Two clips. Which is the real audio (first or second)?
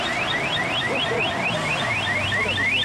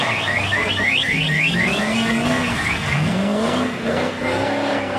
first